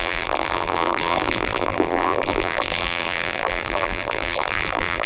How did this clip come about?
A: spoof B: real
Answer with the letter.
A